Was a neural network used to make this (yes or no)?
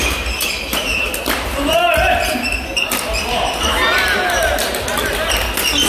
no